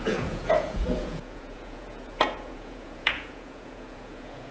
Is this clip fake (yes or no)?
yes